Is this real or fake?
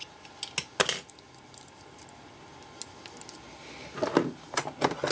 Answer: real